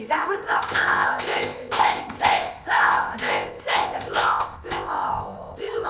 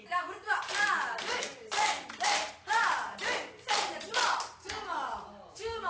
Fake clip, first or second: first